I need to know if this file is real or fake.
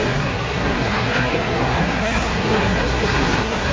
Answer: fake